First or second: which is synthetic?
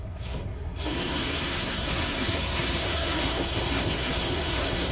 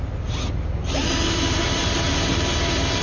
first